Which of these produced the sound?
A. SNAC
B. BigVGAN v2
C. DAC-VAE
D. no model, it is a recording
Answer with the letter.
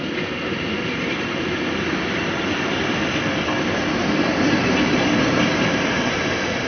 D